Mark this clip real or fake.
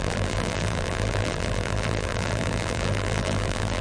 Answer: fake